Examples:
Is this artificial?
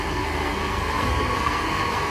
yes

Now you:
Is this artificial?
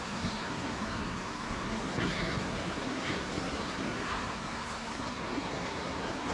yes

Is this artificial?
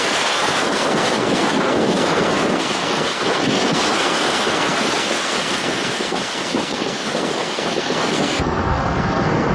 yes